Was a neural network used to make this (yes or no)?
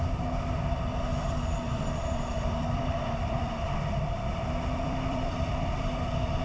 yes